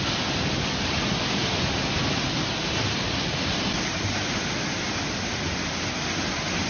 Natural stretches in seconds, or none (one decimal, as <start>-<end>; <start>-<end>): 0.0-6.7